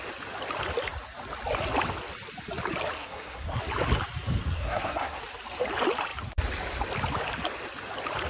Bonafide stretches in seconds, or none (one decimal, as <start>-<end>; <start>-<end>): 0.0-3.0; 3.6-4.4; 5.2-8.3